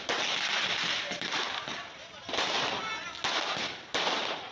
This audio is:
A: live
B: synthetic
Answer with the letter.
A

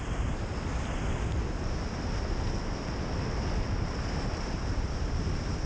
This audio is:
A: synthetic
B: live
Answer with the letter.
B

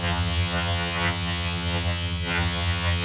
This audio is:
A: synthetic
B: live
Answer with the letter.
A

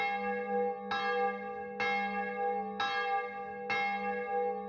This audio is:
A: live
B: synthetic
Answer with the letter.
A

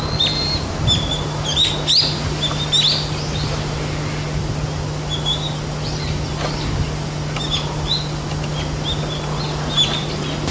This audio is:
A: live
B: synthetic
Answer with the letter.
A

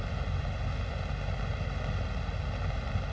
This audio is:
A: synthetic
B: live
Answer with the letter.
B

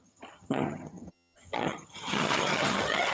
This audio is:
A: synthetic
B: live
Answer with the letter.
A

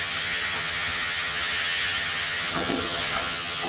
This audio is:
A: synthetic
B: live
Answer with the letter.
A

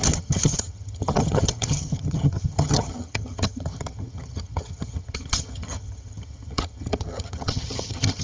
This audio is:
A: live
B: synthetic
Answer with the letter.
B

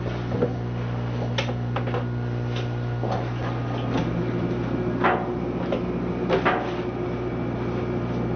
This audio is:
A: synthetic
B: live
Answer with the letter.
B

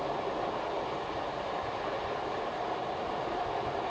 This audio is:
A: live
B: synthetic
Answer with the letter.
A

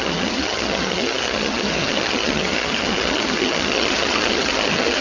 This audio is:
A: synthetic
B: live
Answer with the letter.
A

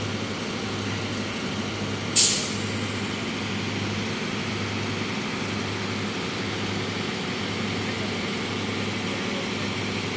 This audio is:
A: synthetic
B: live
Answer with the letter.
B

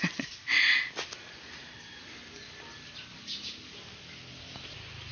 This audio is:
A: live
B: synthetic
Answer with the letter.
A